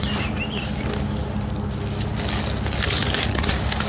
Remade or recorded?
recorded